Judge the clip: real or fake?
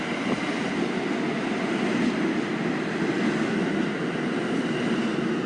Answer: real